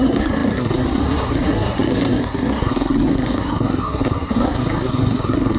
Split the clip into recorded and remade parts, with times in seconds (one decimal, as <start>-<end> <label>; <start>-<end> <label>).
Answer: 0.0-5.6 remade